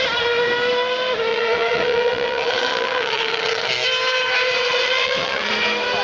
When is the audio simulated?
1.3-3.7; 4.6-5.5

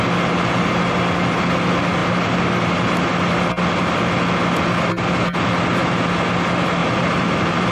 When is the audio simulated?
6.8-7.7